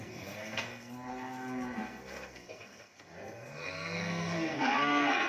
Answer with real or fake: fake